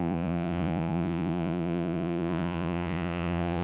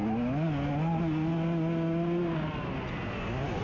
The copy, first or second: first